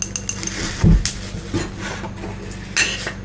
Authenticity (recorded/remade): recorded